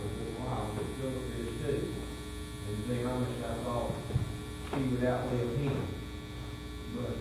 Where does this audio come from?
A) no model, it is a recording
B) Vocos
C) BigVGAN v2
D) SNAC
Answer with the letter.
A